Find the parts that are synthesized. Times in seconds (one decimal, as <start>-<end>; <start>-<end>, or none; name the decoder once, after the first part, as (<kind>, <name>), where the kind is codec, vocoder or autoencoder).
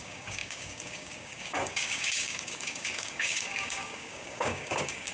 0.0-5.1 (codec, DAC)